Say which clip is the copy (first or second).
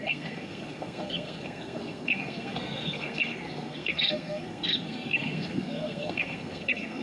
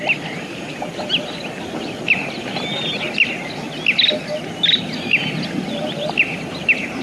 first